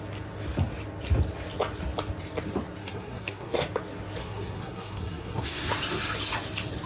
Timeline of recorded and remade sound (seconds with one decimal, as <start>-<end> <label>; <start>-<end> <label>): 0.0-2.8 recorded; 2.8-3.6 remade; 3.6-4.2 recorded; 4.2-5.7 remade; 5.7-6.9 recorded